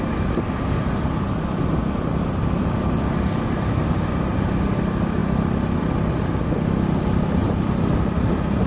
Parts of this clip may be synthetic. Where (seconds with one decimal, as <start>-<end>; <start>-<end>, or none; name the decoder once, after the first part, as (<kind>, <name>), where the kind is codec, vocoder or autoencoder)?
1.8-2.6 (vocoder, BigVGAN v2); 7.4-8.7